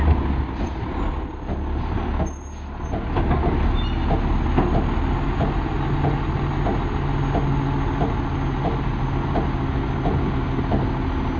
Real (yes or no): yes